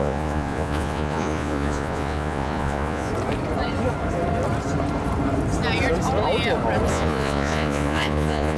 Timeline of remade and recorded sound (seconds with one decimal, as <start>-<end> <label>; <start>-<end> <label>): 0.0-3.1 remade; 3.1-6.9 recorded; 6.9-8.6 remade